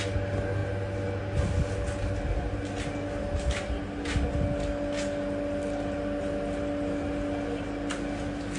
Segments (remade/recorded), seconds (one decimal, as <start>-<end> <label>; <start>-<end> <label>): 0.0-8.6 recorded

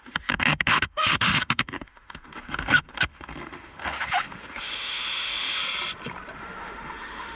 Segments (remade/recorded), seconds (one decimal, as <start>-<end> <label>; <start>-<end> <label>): 0.0-5.6 remade; 5.6-6.4 recorded; 6.4-7.4 remade

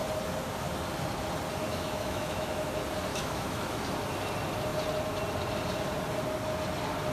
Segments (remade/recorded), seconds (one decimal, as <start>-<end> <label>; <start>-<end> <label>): 0.0-1.7 recorded; 1.7-2.7 remade; 2.7-3.1 recorded; 3.1-3.8 remade; 3.8-7.1 recorded